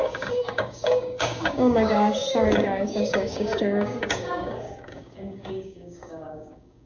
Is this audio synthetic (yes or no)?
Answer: yes